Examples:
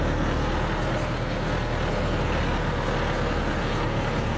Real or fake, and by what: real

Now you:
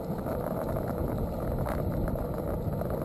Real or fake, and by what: real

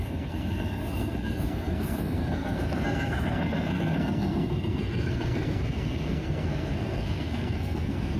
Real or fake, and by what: fake, codec, SNAC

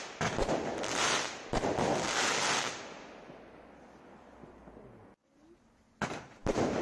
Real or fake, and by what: real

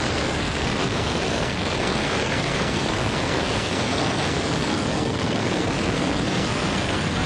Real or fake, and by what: fake, codec, SNAC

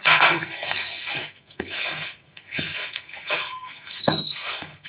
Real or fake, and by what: fake, codec, SNAC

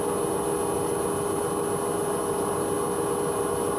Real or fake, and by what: real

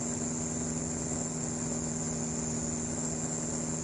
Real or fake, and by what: real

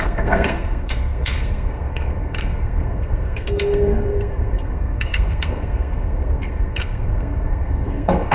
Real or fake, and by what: fake, codec, SNAC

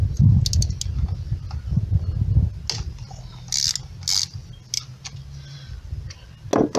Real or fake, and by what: real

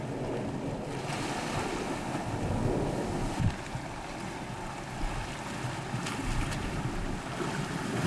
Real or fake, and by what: real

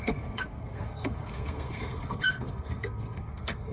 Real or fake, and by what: fake, codec, SNAC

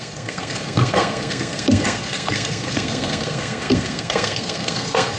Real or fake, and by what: fake, codec, SNAC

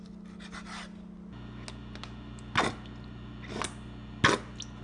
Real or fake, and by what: real